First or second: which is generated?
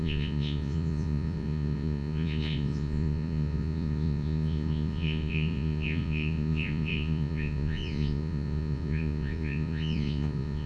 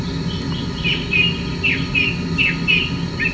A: first